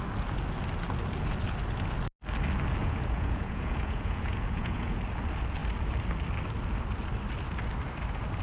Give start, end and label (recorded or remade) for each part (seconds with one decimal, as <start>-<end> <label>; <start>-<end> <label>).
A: 0.0-2.8 recorded; 2.8-5.0 remade; 5.0-8.4 recorded